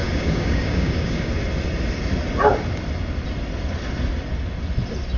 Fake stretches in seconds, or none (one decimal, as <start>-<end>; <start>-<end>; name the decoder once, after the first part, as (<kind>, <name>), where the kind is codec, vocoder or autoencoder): 0.0-1.3 (codec, DAC)